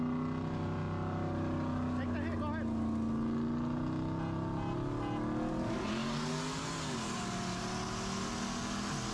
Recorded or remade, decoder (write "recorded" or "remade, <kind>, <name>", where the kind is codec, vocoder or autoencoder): recorded